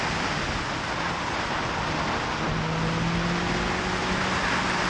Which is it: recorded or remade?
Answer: recorded